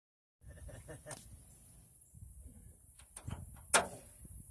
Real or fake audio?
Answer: real